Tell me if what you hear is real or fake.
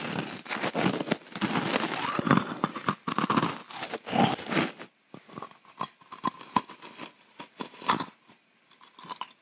real